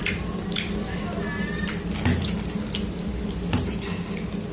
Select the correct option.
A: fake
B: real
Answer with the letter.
B